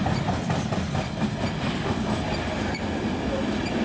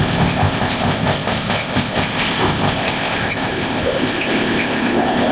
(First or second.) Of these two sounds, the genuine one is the first